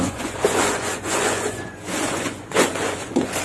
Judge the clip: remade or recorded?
remade